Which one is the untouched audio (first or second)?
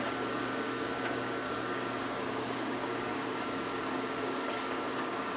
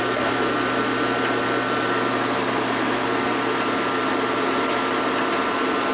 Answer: second